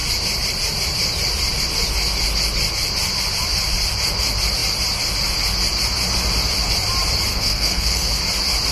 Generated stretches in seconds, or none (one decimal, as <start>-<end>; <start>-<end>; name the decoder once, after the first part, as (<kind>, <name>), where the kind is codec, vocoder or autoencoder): 7.3-8.2 (codec, SNAC)